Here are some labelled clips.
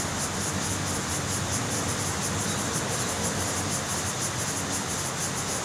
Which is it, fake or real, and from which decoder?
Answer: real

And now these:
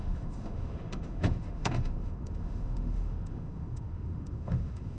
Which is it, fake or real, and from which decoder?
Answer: fake, autoencoder, DAC-VAE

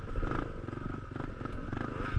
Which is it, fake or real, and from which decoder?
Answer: real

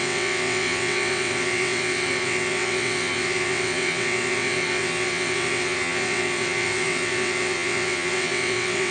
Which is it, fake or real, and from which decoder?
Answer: fake, vocoder, WaveNeXt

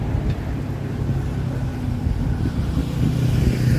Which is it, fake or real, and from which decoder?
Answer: real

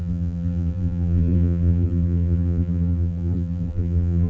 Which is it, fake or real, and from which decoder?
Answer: fake, vocoder, BigVGAN v2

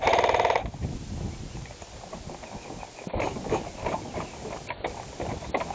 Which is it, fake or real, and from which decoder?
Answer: real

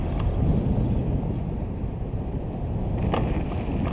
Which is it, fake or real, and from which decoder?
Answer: real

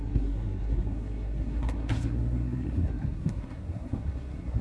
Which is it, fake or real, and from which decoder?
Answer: fake, codec, SNAC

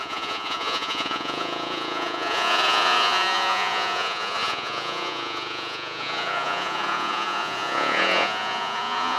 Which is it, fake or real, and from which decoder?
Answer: fake, vocoder, Vocos